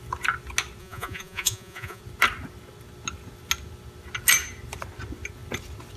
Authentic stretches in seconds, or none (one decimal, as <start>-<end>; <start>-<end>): 0.0-0.8; 2.0-6.0